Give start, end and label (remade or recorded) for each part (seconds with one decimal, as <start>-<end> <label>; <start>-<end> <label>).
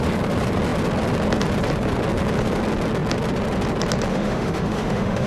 0.0-4.1 recorded; 4.1-5.3 remade